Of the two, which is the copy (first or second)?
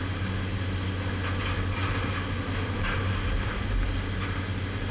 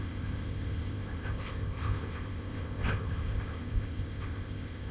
second